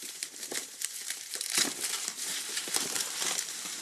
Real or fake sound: fake